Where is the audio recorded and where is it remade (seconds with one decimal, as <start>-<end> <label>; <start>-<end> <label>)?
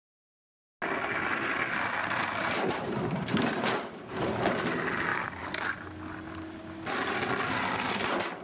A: 0.0-2.4 recorded; 2.4-3.8 remade; 3.8-8.4 recorded